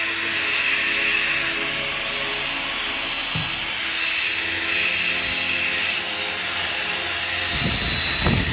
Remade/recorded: recorded